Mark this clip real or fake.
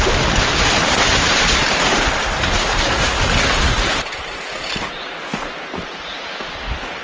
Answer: real